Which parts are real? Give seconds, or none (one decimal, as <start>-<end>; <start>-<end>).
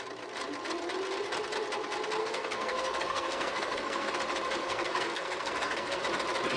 0.0-2.2; 4.1-4.6; 6.0-6.6